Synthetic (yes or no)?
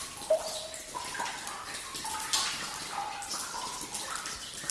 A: no